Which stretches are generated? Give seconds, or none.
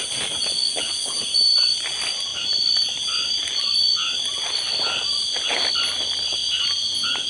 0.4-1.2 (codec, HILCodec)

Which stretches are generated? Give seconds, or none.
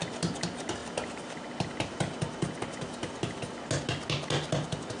none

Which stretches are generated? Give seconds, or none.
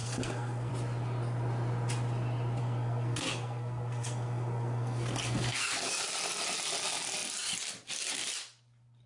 0.0-0.7 (codec, SNAC); 2.6-6.0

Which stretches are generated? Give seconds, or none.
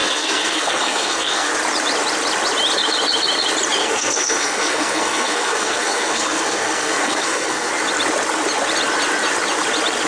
0.0-1.5 (codec, SNAC); 3.8-7.7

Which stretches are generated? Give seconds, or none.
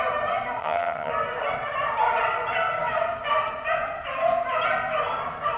0.6-1.1 (vocoder, HiFi-GAN)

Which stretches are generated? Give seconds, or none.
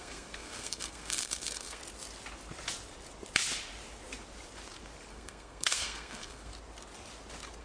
0.0-1.8 (codec, SNAC); 5.1-6.5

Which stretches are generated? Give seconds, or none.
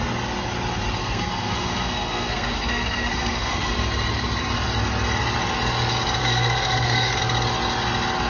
1.0-3.7 (codec, SNAC); 6.2-7.2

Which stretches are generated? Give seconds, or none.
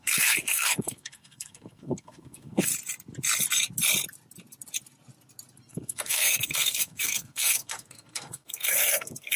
0.0-2.7 (codec, SNAC); 5.7-9.4